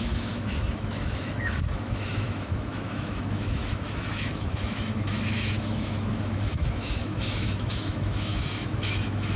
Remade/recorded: remade